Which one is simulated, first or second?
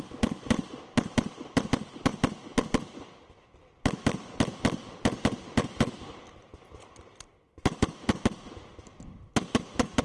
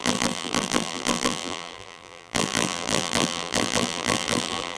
second